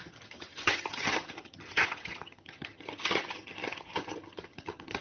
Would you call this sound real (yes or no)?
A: no